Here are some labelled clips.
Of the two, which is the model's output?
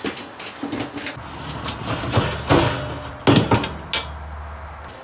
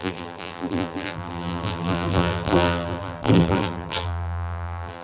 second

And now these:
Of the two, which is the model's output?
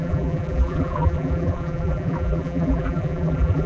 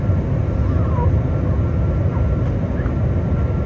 first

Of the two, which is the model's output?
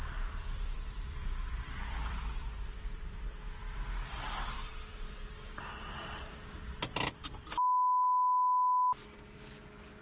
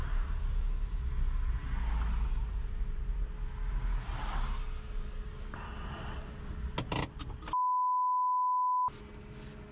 first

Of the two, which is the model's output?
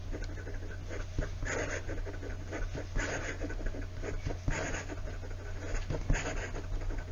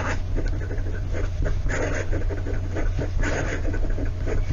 second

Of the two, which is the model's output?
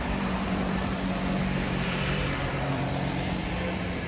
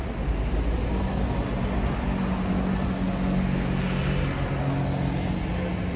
first